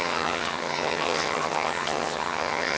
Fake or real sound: fake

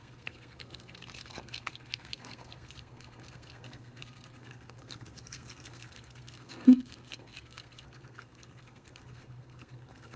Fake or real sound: fake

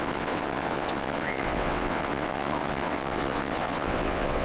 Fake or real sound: fake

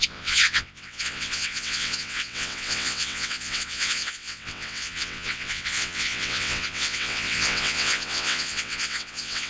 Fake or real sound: fake